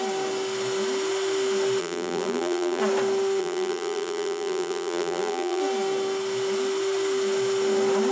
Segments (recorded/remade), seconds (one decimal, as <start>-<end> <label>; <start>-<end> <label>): 0.0-1.8 recorded; 1.8-2.8 remade; 2.8-3.4 recorded; 3.4-5.6 remade; 5.6-8.1 recorded